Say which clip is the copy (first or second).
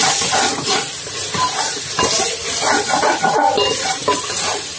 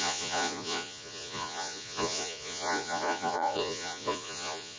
second